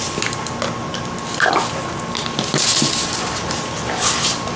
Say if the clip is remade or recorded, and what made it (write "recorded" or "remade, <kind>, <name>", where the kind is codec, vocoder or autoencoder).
recorded